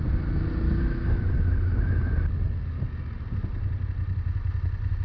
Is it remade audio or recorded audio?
recorded